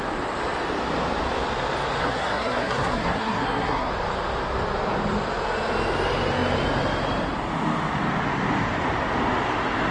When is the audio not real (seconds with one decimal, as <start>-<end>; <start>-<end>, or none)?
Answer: 2.0-3.9